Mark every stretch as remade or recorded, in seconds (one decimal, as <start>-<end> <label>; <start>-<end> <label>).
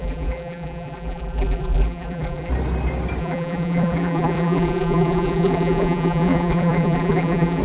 0.0-2.5 remade; 2.5-3.2 recorded; 3.2-7.6 remade